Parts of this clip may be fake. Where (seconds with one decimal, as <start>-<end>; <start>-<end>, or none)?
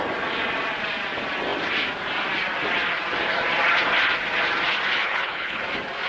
5.0-5.6